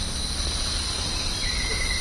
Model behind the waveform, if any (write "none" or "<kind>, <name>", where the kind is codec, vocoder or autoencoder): vocoder, BigVGAN v2